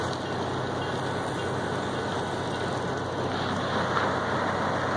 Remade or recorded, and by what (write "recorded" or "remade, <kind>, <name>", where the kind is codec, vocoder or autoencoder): recorded